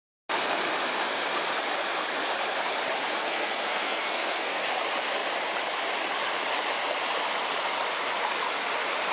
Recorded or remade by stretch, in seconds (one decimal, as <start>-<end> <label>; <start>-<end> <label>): 0.0-3.2 recorded; 3.2-4.7 remade; 4.7-9.1 recorded